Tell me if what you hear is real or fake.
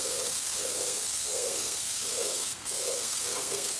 fake